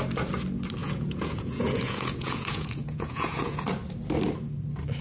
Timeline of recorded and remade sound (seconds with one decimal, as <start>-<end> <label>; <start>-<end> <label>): 0.0-0.8 recorded; 0.8-3.6 remade; 3.6-5.0 recorded